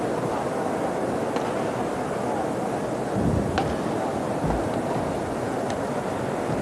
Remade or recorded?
recorded